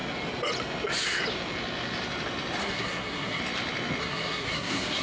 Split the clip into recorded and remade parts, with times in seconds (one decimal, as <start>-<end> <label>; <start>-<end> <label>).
0.0-2.6 recorded; 2.6-3.4 remade; 3.4-4.0 recorded; 4.0-5.0 remade